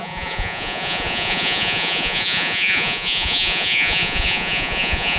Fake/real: fake